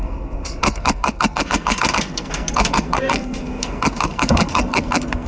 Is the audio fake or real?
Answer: fake